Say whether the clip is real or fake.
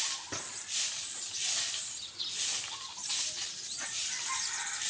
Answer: fake